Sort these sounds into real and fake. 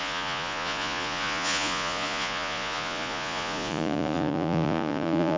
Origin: fake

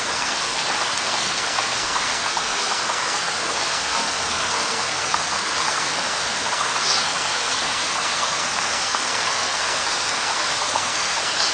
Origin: fake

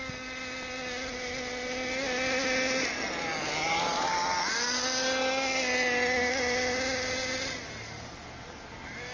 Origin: real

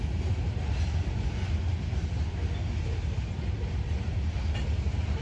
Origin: real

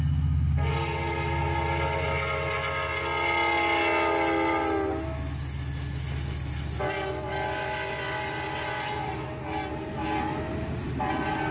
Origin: real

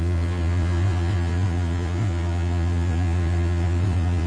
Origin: fake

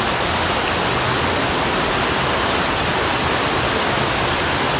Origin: real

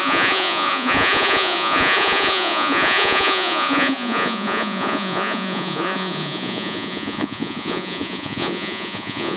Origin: fake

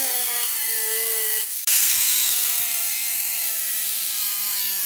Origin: fake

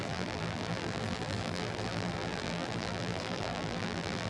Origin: fake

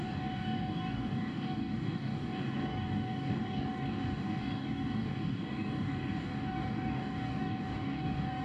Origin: fake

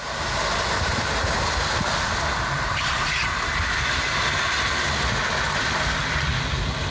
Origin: real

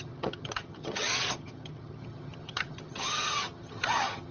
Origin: fake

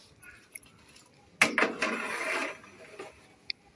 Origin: real